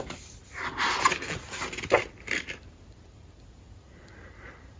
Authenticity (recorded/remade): recorded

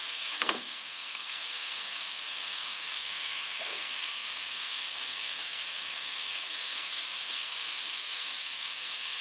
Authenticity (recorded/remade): remade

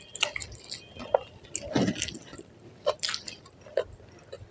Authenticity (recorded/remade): recorded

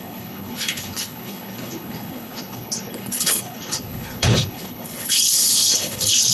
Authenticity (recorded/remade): remade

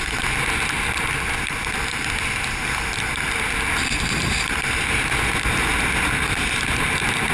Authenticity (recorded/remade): recorded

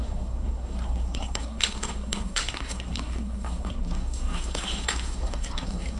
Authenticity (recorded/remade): remade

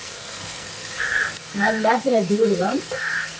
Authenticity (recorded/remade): remade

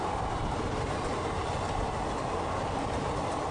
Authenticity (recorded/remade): recorded